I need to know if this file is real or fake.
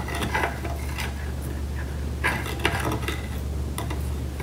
real